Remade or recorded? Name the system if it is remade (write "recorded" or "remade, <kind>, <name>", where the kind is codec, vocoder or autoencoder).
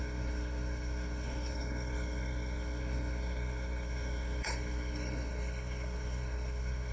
remade, codec, HILCodec